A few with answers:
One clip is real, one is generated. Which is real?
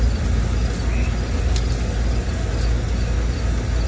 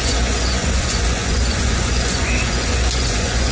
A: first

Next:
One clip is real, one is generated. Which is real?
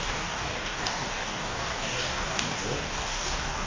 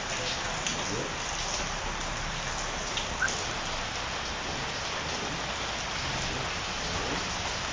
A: second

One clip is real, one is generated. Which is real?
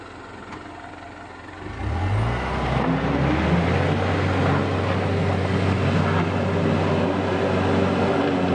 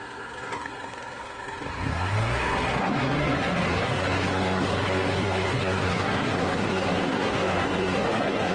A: first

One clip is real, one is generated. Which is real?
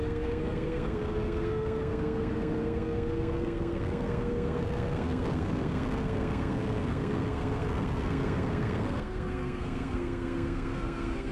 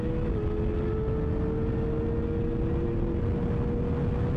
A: second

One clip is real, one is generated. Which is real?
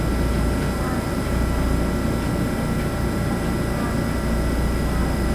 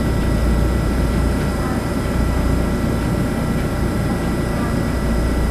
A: first